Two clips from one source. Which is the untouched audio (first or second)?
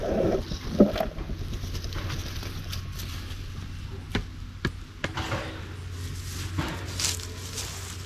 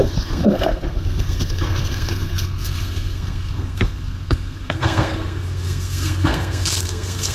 first